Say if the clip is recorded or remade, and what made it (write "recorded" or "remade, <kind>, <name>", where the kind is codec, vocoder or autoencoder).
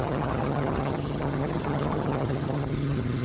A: remade, vocoder, HiFi-GAN